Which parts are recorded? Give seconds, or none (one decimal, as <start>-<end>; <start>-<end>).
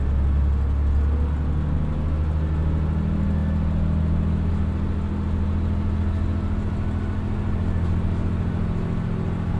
0.0-9.6